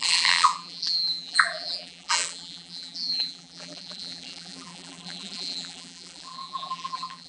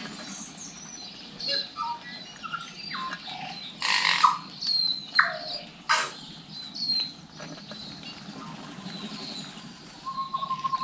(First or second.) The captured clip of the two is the second